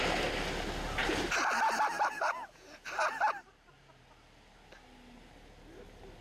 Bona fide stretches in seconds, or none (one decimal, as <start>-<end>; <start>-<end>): 0.0-6.2